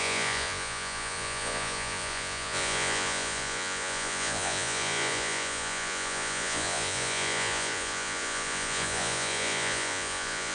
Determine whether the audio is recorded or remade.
remade